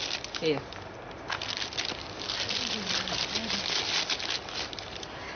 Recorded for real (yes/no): yes